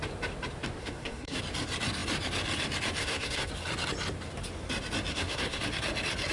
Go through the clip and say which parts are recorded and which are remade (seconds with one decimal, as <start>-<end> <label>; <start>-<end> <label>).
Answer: 0.0-0.8 recorded; 0.8-1.4 remade; 1.4-3.0 recorded; 3.0-3.5 remade; 3.5-5.1 recorded; 5.1-5.6 remade; 5.6-6.3 recorded